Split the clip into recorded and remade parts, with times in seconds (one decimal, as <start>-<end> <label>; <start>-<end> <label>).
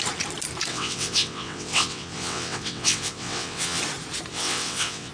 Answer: 0.0-0.7 recorded; 0.7-3.8 remade; 3.8-4.3 recorded; 4.3-5.1 remade